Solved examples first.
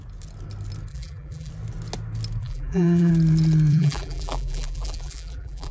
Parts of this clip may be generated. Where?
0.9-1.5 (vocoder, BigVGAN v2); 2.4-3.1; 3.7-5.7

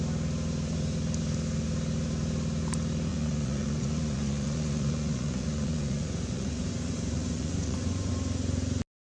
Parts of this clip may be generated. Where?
3.1-8.1 (vocoder, Vocos)

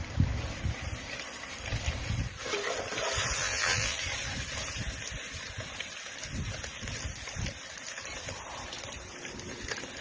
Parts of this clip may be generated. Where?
3.4-4.0 (vocoder, BigVGAN v2)

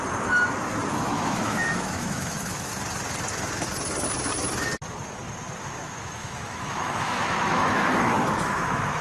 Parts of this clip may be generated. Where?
0.9-2.7 (autoencoder, DAC-VAE); 5.6-9.0

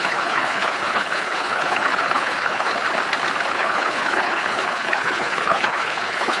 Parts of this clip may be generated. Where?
0.0-2.7 (codec, HILCodec); 3.5-6.4

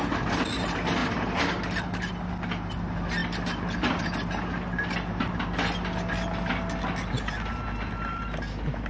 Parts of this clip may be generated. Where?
1.0-2.1 (vocoder, BigVGAN v2)

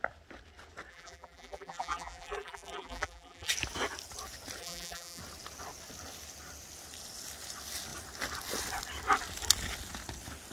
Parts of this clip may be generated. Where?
0.9-3.5 (vocoder, BigVGAN v2); 4.6-5.2

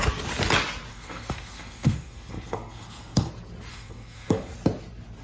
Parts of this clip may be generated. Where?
0.9-3.3 (codec, SNAC); 3.7-4.5